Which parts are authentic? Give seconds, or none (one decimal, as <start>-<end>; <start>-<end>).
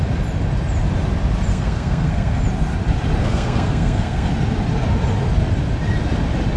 0.0-1.5; 2.4-3.2; 4.3-6.6